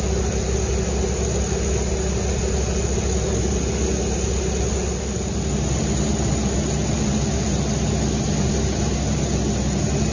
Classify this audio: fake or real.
real